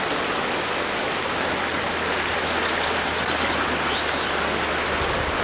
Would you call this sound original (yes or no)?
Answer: yes